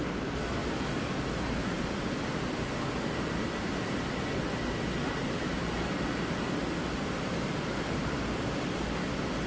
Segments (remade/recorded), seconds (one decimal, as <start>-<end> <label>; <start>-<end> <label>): 0.0-0.6 recorded; 0.6-3.7 remade; 3.7-5.2 recorded; 5.2-8.6 remade; 8.6-9.5 recorded